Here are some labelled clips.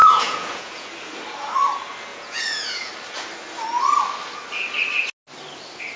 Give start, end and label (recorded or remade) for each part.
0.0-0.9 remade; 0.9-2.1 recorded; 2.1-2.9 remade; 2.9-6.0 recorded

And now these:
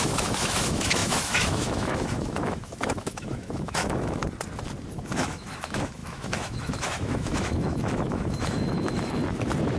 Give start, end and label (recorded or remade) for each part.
0.0-4.2 remade; 4.2-4.9 recorded; 4.9-9.2 remade; 9.2-9.8 recorded

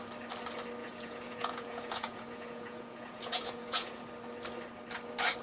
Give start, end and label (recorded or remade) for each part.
0.0-0.8 recorded; 0.8-4.0 remade; 4.0-5.4 recorded

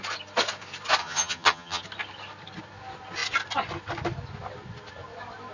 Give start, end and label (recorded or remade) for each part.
0.0-1.0 recorded; 1.0-1.8 remade; 1.8-5.5 recorded

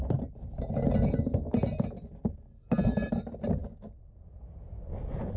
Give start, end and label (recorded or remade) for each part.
0.0-5.4 recorded

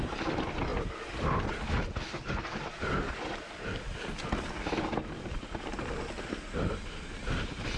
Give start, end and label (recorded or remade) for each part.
0.0-7.8 recorded

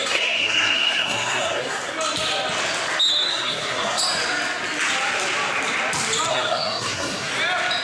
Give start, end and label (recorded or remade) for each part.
0.0-1.9 remade; 1.9-3.3 recorded; 3.3-4.0 remade; 4.0-6.3 recorded; 6.3-7.3 remade; 7.3-7.8 recorded